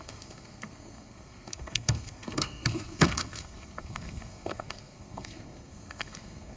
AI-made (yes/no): yes